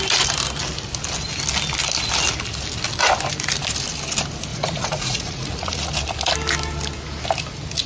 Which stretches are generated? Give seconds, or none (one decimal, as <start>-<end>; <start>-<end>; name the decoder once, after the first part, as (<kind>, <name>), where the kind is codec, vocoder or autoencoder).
4.5-5.9 (vocoder, Vocos)